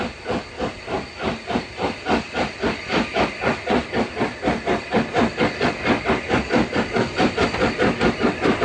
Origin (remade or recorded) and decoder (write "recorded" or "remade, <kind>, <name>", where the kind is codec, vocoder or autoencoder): recorded